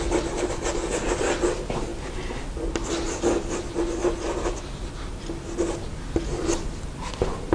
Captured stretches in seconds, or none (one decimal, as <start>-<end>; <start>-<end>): 0.0-7.5